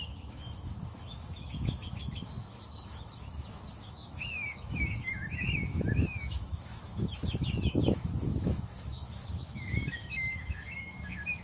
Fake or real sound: fake